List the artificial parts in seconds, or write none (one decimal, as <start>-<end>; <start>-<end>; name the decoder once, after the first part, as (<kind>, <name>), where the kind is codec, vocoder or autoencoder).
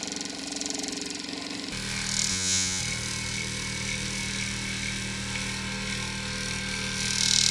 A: 2.3-2.8 (vocoder, Vocos)